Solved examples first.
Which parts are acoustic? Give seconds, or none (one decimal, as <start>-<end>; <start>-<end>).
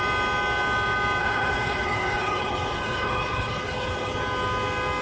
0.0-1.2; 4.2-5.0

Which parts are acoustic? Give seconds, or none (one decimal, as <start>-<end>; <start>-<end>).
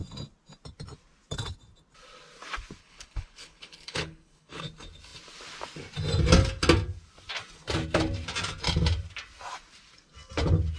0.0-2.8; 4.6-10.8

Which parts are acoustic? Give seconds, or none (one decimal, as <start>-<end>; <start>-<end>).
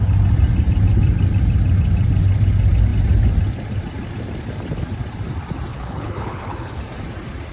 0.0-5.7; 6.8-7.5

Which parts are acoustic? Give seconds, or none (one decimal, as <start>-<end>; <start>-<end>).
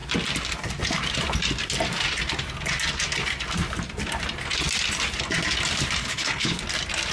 0.0-6.0; 6.6-7.1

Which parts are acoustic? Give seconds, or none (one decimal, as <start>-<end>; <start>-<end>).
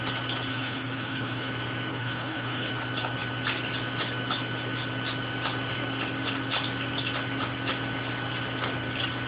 0.0-0.5; 1.5-1.9; 2.7-9.3